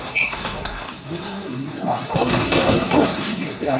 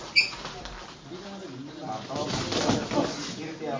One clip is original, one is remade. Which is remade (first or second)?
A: first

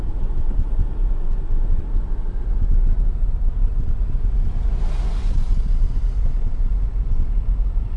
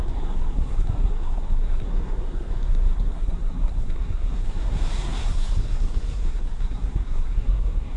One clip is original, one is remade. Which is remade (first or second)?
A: second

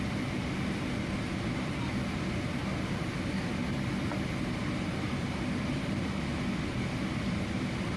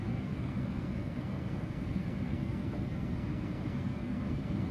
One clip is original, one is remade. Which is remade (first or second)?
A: second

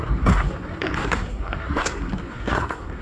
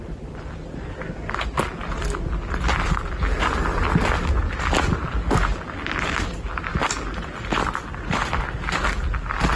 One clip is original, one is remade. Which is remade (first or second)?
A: first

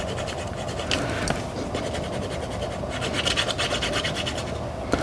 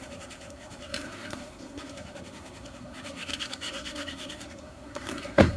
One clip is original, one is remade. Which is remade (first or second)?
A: second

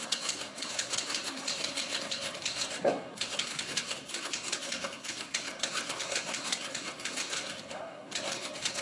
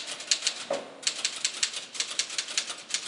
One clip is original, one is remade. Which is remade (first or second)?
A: first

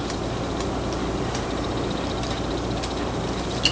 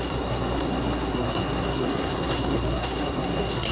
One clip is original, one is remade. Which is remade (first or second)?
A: second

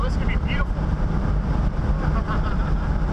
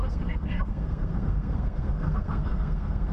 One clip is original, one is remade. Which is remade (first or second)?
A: second